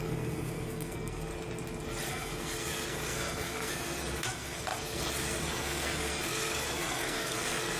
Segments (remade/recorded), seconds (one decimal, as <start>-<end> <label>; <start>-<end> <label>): 0.0-1.3 remade; 1.3-2.1 recorded; 2.1-7.8 remade